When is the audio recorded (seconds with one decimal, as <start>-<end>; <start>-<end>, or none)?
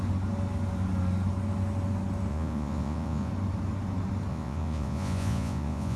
0.0-2.3; 3.3-4.3